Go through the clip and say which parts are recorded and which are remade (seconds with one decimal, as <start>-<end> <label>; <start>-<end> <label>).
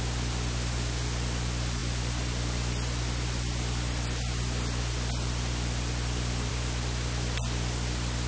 0.0-8.3 recorded